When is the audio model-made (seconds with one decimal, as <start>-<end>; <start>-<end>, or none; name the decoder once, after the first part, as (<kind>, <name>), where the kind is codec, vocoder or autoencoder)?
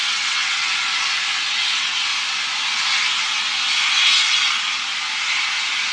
0.0-0.7 (vocoder, WaveNeXt); 1.5-2.1